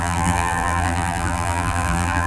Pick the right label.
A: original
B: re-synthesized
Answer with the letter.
B